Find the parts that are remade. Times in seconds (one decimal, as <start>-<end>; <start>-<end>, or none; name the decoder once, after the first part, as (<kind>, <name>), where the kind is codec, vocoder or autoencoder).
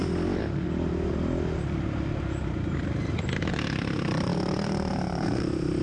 3.5-5.8 (vocoder, BigVGAN v2)